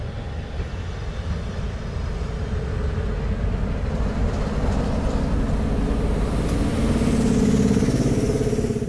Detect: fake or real real